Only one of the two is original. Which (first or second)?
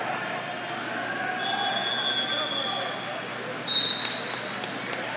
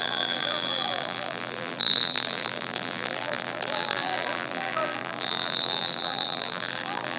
first